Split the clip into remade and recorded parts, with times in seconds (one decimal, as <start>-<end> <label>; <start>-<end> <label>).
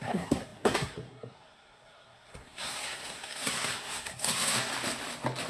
0.0-4.7 remade; 4.7-5.5 recorded